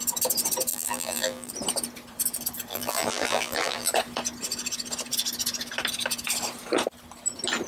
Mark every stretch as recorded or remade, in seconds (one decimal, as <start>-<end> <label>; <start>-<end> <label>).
0.0-0.7 recorded; 0.7-1.5 remade; 1.5-2.7 recorded; 2.7-3.9 remade; 3.9-7.7 recorded